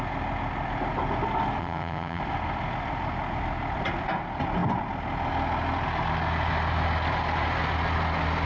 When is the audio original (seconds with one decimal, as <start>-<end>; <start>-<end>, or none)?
0.0-1.6; 2.2-8.5

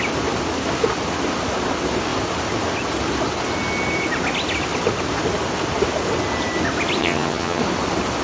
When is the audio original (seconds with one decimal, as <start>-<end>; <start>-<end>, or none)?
0.0-7.0; 7.6-8.2